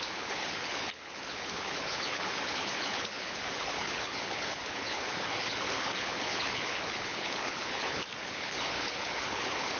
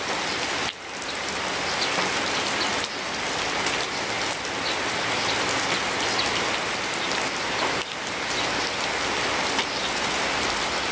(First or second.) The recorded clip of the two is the second